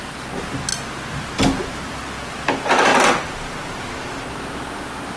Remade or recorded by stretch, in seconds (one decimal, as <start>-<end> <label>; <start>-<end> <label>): 0.0-2.9 recorded; 2.9-4.2 remade; 4.2-5.2 recorded